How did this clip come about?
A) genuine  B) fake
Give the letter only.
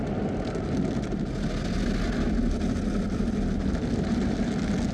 A